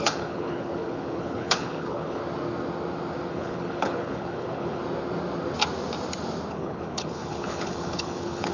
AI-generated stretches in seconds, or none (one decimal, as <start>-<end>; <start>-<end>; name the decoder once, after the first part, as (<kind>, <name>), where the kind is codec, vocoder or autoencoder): 0.0-2.2 (codec, HILCodec); 3.3-4.8; 6.5-8.5